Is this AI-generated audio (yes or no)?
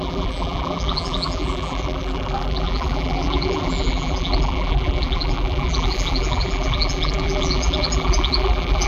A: yes